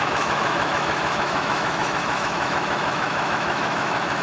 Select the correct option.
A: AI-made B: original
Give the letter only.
A